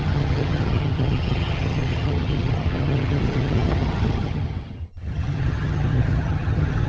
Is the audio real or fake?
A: fake